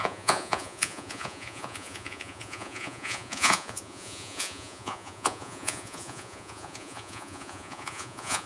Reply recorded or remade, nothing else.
remade